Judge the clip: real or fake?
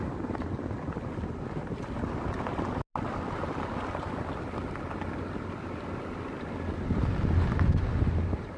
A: real